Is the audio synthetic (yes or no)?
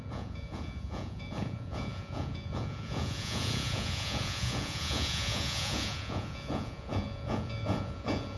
yes